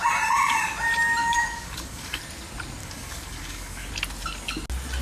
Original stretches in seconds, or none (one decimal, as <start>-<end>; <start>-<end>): 0.0-1.2; 2.2-2.8; 3.9-5.0